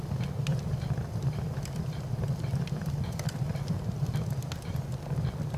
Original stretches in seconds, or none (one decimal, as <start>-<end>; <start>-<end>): 0.0-0.5; 3.8-5.6